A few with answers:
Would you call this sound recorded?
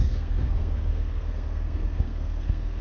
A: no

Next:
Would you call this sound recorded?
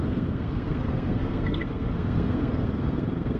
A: no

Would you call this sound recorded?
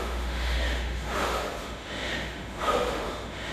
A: no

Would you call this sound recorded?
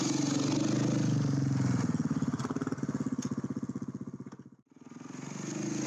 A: yes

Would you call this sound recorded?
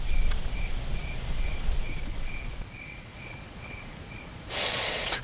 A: no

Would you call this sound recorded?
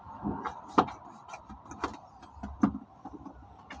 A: yes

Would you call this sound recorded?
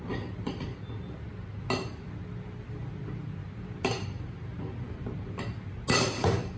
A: yes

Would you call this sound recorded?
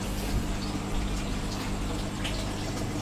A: yes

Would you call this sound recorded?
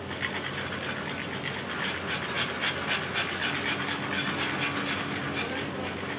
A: yes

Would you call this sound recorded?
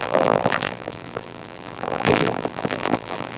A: no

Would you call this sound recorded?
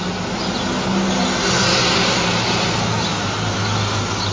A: yes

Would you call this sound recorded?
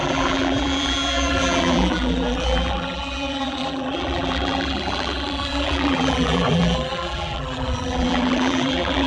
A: no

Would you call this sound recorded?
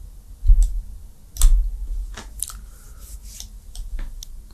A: yes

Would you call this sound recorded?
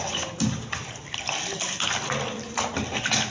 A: yes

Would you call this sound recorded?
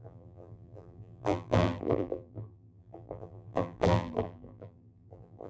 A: no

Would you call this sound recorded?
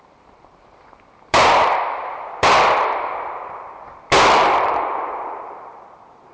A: no